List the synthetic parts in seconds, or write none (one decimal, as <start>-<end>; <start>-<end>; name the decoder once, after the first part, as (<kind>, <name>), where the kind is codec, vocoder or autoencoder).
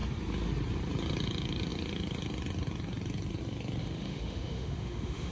3.8-5.3 (autoencoder, DAC-VAE)